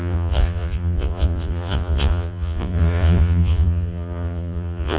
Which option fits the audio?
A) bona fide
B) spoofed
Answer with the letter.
B